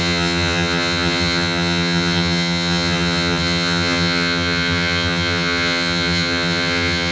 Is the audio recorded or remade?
remade